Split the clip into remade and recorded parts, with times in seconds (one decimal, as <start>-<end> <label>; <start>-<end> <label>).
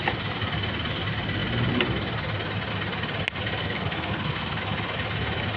0.0-3.6 recorded; 3.6-4.6 remade; 4.6-5.6 recorded